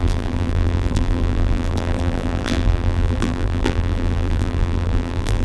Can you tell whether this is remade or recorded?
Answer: remade